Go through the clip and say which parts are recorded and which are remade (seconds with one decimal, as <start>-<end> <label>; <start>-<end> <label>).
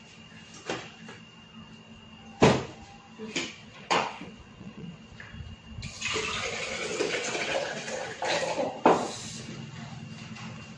0.0-3.6 recorded; 3.6-5.0 remade; 5.0-6.9 recorded; 6.9-7.9 remade; 7.9-10.8 recorded